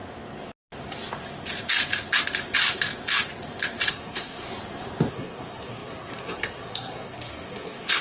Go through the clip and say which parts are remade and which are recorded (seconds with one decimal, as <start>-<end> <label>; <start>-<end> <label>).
0.0-3.9 recorded; 3.9-4.5 remade; 4.5-5.1 recorded; 5.1-8.0 remade